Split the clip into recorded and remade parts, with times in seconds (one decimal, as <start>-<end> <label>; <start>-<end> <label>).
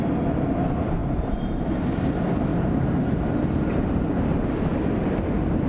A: 0.0-1.0 recorded; 1.0-1.8 remade; 1.8-2.5 recorded; 2.5-4.3 remade; 4.3-5.7 recorded